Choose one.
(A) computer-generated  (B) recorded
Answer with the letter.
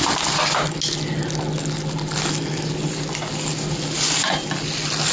B